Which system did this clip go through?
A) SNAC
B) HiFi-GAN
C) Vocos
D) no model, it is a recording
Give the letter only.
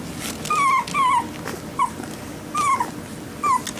D